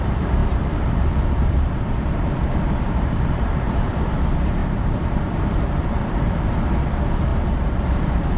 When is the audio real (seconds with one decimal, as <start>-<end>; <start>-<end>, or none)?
7.3-7.9